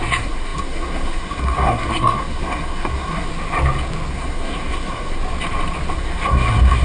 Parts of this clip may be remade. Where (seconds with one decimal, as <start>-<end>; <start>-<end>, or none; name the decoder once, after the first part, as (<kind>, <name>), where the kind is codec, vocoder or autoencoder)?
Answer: 0.0-3.3 (codec, SNAC); 4.1-5.2; 5.9-6.8